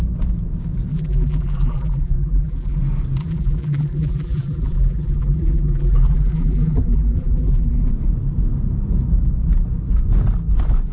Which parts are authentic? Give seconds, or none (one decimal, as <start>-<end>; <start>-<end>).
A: 0.0-0.9; 2.8-3.2; 7.9-10.9